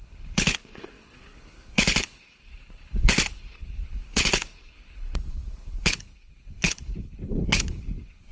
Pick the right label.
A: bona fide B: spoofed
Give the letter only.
B